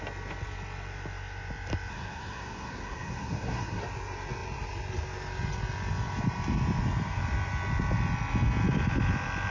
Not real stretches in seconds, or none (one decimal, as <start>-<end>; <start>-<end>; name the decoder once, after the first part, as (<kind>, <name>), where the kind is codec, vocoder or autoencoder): 1.9-3.8 (codec, SNAC)